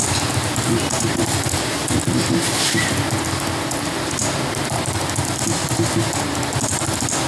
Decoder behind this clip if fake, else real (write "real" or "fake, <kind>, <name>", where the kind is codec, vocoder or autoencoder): real